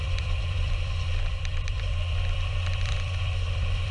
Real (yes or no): no